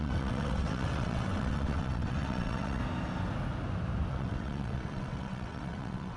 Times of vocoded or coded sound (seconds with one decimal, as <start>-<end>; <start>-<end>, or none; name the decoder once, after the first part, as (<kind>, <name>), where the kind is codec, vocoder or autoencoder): 0.0-2.8 (vocoder, WaveNeXt); 4.1-6.2